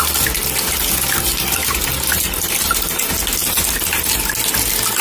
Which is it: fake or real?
real